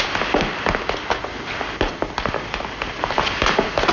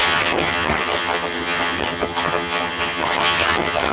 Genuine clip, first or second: first